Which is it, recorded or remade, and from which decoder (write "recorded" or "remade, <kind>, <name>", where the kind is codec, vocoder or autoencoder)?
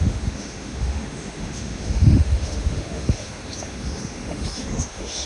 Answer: remade, autoencoder, DAC-VAE